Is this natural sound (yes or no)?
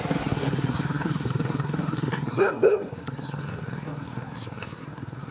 no